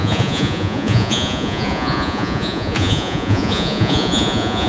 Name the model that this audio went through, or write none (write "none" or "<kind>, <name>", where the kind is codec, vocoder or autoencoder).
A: vocoder, Vocos